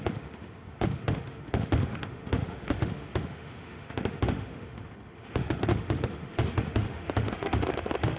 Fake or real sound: fake